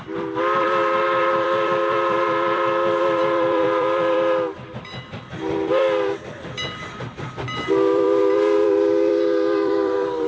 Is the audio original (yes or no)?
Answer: no